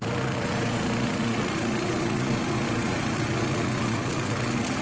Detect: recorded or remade remade